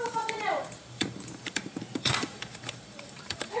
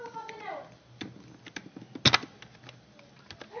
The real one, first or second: second